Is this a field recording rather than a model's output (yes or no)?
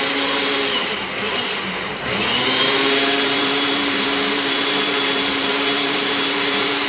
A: no